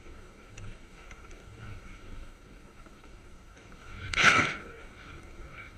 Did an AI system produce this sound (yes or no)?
yes